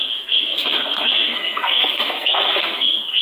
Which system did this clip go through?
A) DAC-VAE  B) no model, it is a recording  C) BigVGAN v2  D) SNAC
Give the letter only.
D